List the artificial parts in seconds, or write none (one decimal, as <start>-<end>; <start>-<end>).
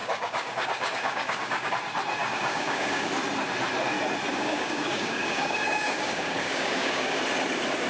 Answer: 0.0-1.7; 2.2-3.1; 4.3-7.2